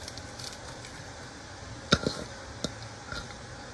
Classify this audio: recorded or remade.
recorded